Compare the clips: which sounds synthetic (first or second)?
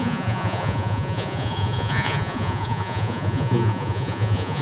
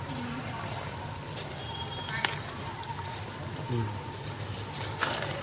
first